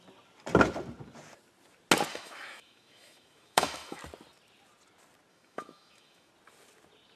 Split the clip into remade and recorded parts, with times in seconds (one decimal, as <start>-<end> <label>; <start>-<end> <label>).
0.0-2.1 recorded; 2.1-4.0 remade; 4.0-5.3 recorded; 5.3-6.3 remade; 6.3-7.2 recorded